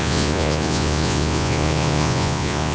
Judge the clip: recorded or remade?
remade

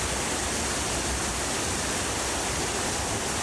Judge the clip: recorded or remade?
recorded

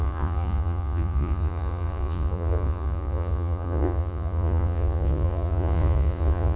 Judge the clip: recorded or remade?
remade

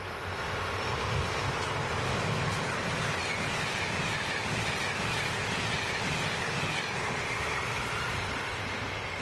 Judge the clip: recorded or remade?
recorded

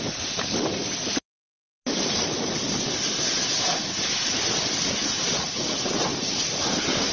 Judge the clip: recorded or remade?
recorded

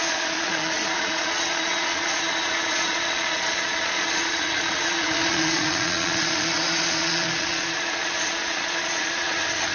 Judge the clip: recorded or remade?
remade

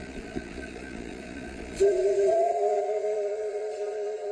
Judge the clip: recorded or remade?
remade